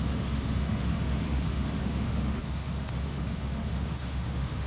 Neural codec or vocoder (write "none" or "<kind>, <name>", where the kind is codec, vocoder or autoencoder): autoencoder, DAC-VAE